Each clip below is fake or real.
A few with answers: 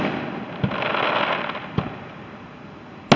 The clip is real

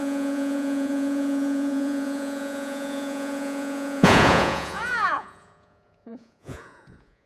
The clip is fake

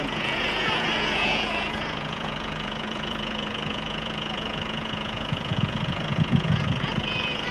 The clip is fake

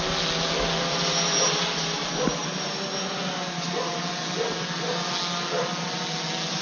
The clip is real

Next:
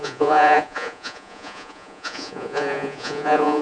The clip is fake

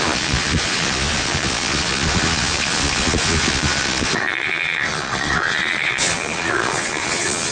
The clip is fake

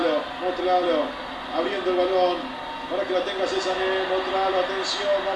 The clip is real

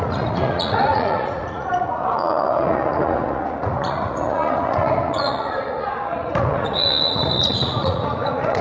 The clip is fake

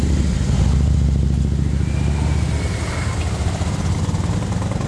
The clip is real